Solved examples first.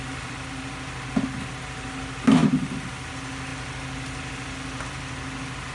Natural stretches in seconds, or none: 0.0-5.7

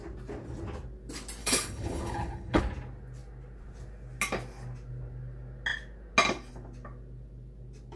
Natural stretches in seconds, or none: 0.0-1.4; 2.6-8.0

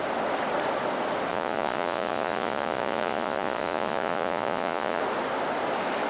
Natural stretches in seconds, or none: 0.0-1.3; 5.0-6.1